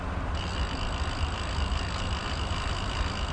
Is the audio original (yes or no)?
yes